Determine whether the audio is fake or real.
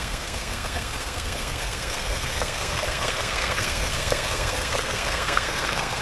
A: fake